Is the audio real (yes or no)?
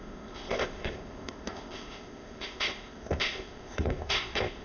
no